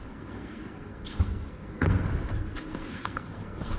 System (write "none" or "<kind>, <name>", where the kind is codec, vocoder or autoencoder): codec, SNAC